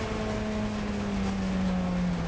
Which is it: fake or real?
real